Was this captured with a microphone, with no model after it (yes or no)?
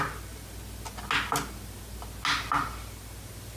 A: yes